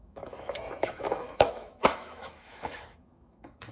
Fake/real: fake